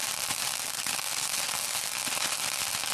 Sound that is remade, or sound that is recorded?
recorded